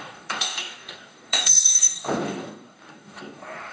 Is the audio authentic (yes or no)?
no